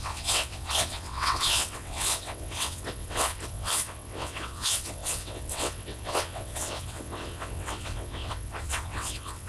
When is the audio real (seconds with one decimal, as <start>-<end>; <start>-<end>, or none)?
none